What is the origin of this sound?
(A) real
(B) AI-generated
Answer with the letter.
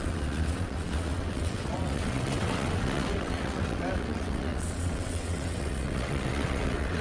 B